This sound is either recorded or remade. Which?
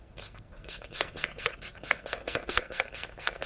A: remade